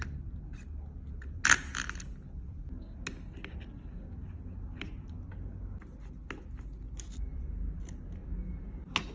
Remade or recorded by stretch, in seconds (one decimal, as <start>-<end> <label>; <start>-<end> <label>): 0.0-9.1 recorded